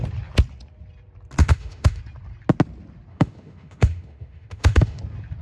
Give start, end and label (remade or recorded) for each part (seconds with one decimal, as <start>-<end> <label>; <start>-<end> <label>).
0.0-1.4 recorded; 1.4-2.0 remade; 2.0-3.1 recorded; 3.1-5.0 remade; 5.0-5.4 recorded